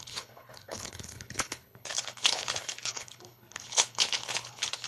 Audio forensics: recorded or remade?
remade